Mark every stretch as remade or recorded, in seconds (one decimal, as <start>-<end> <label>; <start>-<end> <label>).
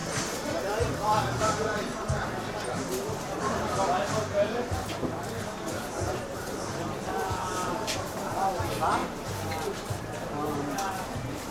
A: 0.0-1.2 recorded; 1.2-1.9 remade; 1.9-4.5 recorded; 4.5-11.5 remade